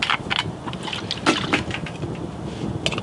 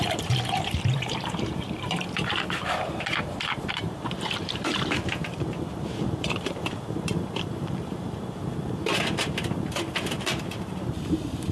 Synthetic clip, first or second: second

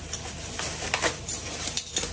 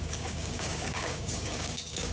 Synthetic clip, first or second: second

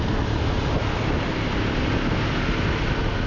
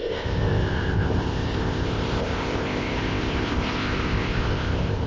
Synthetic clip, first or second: second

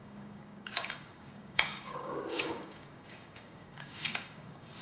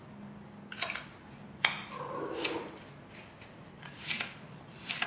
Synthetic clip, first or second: first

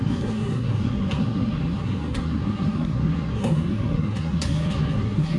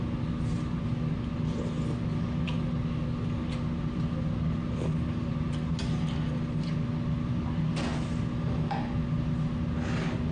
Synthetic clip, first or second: first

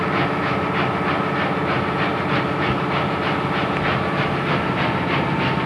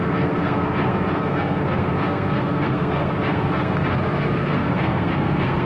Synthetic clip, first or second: second